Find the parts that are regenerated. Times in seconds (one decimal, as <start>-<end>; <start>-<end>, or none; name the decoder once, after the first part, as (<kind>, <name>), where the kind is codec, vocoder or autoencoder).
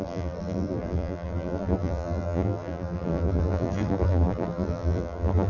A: 0.0-5.5 (vocoder, BigVGAN v2)